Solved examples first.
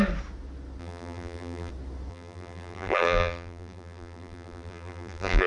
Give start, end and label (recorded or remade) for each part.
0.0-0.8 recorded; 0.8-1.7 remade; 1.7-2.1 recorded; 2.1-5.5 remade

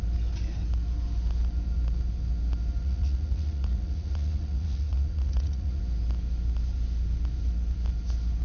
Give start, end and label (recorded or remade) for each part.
0.0-2.8 recorded; 2.8-5.8 remade; 5.8-8.4 recorded

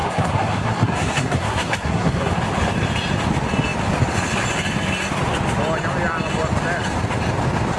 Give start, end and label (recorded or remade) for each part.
0.0-2.3 remade; 2.3-7.8 recorded